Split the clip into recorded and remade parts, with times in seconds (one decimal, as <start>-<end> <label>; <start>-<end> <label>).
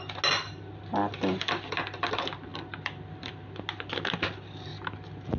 0.0-1.0 recorded; 1.0-2.1 remade; 2.1-2.5 recorded; 2.5-3.3 remade; 3.3-5.4 recorded